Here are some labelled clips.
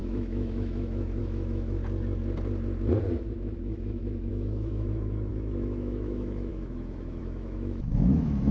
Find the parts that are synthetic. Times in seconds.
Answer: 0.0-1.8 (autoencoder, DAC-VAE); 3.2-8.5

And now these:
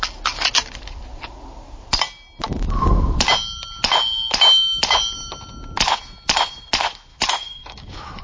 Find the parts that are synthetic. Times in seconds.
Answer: 7.1-8.2 (autoencoder, DAC-VAE)

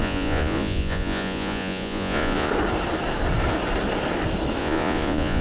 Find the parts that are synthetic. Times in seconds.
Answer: 0.0-2.5 (vocoder, Vocos); 4.6-5.4

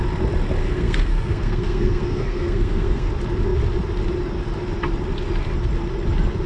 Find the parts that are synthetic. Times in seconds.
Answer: 0.6-3.1 (codec, SNAC)

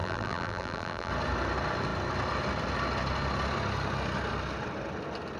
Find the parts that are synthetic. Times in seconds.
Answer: 0.0-1.1 (vocoder, BigVGAN v2)

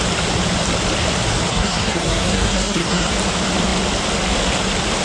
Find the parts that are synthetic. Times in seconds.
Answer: 1.5-3.1 (codec, SNAC)